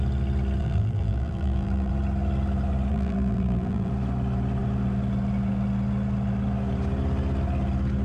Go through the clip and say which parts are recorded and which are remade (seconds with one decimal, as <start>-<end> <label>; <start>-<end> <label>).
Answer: 0.0-0.6 recorded; 0.6-1.9 remade; 1.9-2.9 recorded; 2.9-3.9 remade; 3.9-8.0 recorded